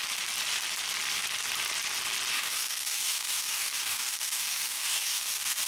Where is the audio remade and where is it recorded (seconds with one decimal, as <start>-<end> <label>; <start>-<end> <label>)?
0.0-2.3 recorded; 2.3-5.7 remade